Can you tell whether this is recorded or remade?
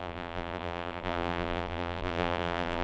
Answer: remade